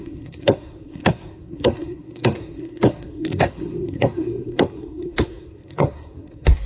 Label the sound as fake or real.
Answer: fake